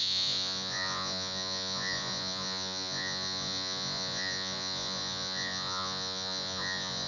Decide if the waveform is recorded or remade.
remade